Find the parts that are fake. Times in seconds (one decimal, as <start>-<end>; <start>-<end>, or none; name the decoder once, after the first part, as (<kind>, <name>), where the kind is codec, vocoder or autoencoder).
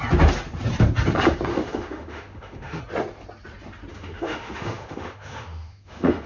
1.5-2.8 (autoencoder, DAC-VAE); 3.9-6.3